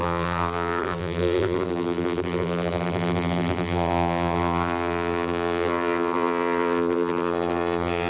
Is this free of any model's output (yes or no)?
no